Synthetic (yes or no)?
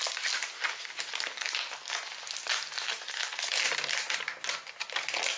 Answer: no